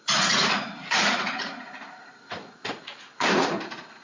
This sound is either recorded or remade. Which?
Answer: remade